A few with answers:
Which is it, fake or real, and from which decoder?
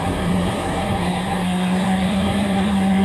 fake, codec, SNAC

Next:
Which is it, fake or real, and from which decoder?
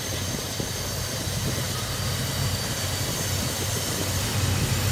real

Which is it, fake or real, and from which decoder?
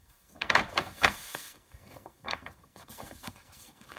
fake, codec, SNAC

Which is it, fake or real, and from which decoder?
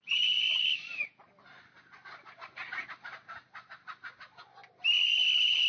real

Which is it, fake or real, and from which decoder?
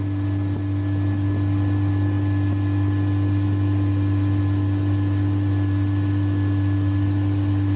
real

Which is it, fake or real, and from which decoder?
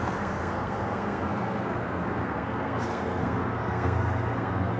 fake, codec, SNAC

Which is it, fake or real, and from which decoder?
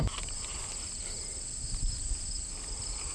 real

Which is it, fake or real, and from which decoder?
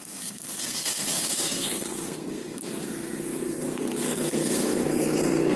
fake, codec, SNAC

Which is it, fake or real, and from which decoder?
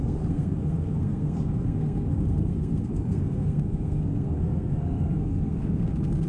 fake, codec, SNAC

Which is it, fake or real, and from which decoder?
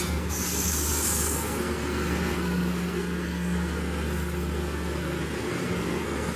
fake, codec, SNAC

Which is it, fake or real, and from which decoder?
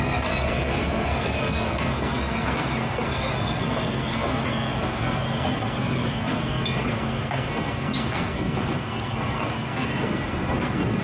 fake, codec, SNAC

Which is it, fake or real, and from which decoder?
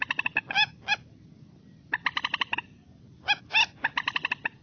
real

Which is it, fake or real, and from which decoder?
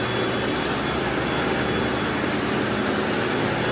real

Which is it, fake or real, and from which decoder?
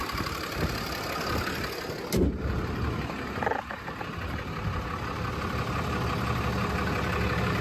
real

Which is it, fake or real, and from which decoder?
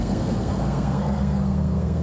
fake, codec, SNAC